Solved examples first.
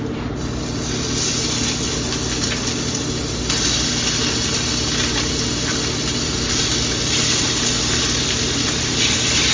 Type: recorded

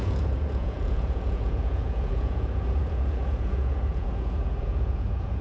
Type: remade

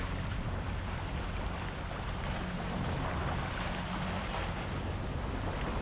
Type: recorded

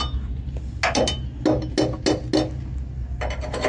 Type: recorded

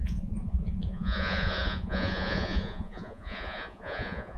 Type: remade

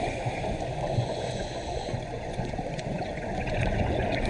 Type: remade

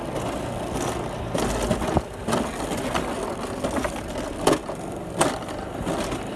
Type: recorded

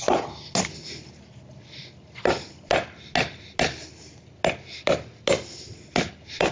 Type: recorded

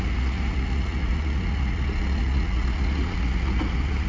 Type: remade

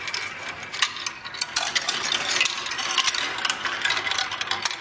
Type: recorded